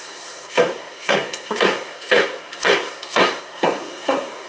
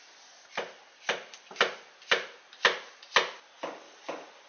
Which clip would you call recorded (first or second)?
second